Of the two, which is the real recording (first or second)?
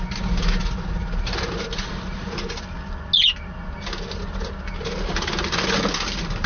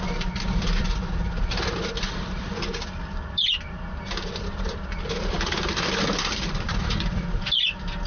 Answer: first